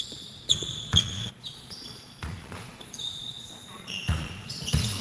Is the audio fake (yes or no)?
yes